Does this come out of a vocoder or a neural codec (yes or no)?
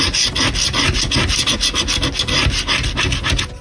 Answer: no